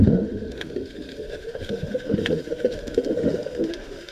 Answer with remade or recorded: remade